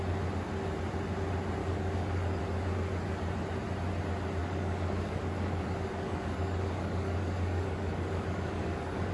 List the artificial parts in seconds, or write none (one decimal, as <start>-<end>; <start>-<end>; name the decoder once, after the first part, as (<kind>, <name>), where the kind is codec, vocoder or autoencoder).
1.6-2.4 (codec, DAC); 4.4-9.1